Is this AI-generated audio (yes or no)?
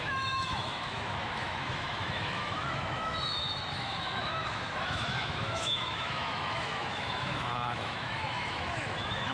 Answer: yes